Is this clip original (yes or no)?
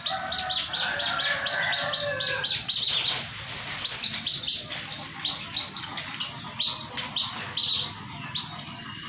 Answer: yes